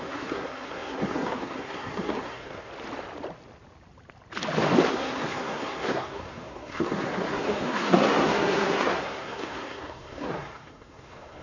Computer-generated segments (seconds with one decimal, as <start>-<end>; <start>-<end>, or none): 0.0-2.7; 4.9-11.4